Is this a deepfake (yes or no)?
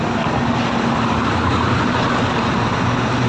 no